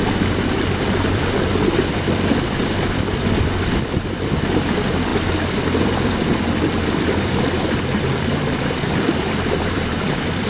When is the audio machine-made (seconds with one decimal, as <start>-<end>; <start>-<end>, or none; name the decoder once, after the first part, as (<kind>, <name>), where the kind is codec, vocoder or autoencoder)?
0.0-5.1 (vocoder, BigVGAN v2); 5.8-10.5

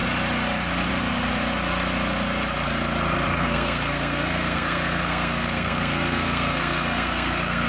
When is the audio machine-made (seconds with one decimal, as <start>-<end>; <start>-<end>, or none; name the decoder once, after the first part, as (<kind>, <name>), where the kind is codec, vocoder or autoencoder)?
3.3-7.7 (codec, SNAC)

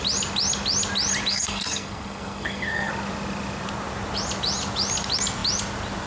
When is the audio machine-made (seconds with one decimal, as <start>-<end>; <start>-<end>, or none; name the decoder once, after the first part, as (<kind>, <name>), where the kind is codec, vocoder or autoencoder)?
1.3-2.9 (codec, SNAC)

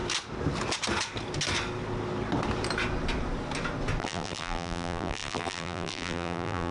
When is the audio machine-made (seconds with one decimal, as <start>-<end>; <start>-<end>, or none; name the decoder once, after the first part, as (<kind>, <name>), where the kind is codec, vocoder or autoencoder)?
4.0-6.7 (vocoder, BigVGAN v2)

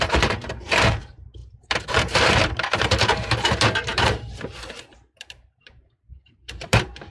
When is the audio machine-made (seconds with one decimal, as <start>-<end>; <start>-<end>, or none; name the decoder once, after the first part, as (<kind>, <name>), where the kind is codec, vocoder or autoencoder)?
0.0-7.1 (vocoder, BigVGAN v2)